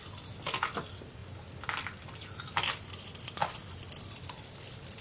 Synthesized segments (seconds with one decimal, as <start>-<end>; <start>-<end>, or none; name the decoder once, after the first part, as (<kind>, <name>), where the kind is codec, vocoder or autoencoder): none

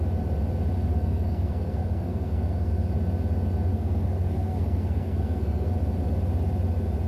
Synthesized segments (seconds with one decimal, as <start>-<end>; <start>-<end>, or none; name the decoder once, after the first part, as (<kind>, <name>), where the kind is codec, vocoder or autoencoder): 0.9-2.9 (codec, SNAC); 3.7-5.7

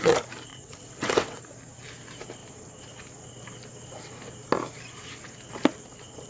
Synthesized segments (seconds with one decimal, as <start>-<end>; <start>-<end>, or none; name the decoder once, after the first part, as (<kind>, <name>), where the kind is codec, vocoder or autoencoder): 0.5-1.4 (vocoder, WaveNeXt)

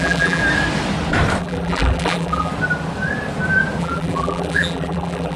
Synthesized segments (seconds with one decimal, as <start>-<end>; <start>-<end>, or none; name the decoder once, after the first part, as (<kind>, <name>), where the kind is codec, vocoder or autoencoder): 0.0-0.4 (vocoder, BigVGAN v2); 1.4-2.5; 3.8-5.4

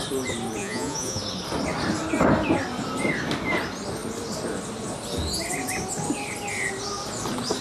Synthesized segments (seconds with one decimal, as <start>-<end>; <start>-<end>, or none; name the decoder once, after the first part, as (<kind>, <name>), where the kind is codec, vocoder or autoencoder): 0.6-1.2 (vocoder, Vocos)